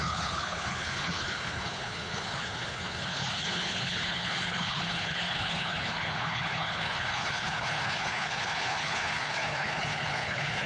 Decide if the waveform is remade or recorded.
remade